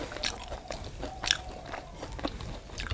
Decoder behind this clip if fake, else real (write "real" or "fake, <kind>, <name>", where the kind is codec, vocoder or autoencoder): real